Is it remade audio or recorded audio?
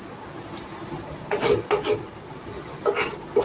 recorded